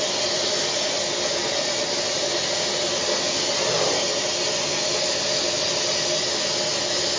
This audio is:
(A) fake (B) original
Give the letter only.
B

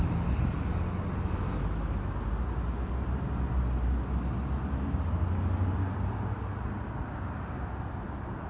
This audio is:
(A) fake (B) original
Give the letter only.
B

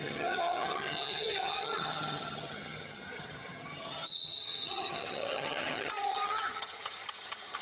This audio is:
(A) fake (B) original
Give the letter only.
A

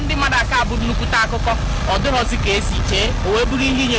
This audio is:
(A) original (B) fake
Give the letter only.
A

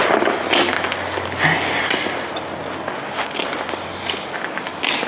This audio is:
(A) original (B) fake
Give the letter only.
A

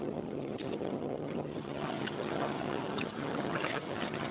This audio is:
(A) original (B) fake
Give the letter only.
B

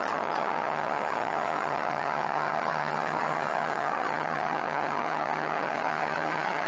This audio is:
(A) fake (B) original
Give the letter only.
A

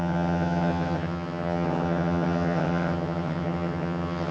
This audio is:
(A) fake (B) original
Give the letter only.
A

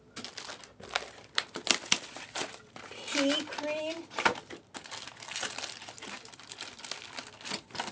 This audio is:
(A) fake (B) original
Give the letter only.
B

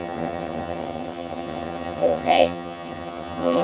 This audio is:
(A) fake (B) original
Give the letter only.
A